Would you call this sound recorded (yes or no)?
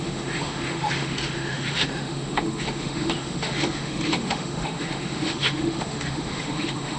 no